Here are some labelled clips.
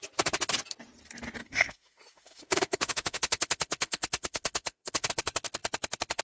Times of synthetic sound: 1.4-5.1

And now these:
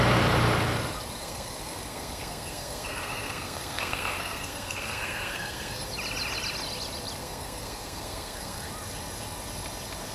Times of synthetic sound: 1.2-5.9; 7.2-8.7

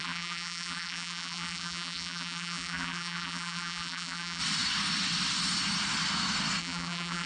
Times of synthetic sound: 0.0-4.4; 6.6-7.3

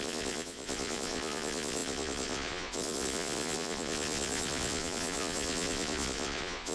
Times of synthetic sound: 0.0-6.7

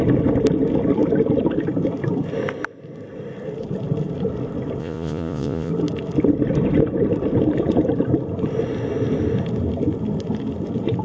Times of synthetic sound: 4.8-5.7

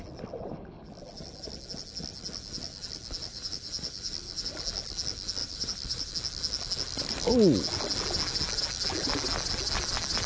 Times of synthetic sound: 3.2-4.6; 5.4-6.1

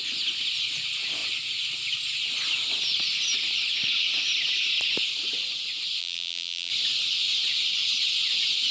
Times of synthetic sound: 6.0-6.7